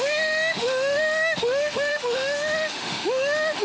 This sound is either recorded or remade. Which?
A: remade